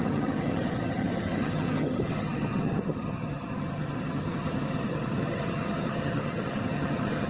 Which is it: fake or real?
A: fake